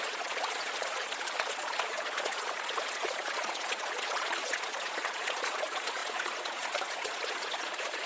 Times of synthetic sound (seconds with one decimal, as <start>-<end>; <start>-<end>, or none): 0.0-8.1